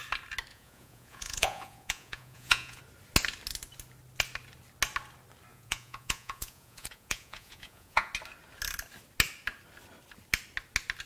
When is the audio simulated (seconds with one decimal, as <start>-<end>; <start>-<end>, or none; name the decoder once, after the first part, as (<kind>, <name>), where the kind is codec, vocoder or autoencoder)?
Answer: 0.5-2.8 (vocoder, Vocos); 5.5-8.1